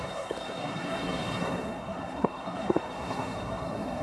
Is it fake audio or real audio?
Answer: fake